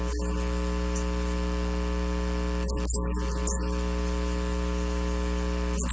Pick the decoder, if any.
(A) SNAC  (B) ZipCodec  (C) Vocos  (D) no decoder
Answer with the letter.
D